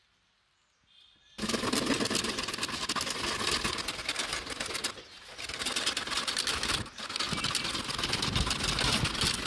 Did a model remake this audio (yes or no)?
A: no